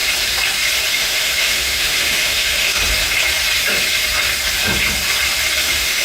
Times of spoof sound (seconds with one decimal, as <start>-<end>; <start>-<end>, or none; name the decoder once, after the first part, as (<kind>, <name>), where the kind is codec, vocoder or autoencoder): 0.9-2.8 (autoencoder, DAC-VAE); 5.6-6.0